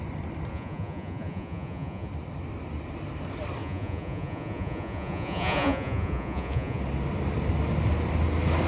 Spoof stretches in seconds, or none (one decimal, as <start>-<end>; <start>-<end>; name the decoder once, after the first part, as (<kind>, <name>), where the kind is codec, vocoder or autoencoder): 0.5-2.1 (vocoder, Vocos); 3.6-6.8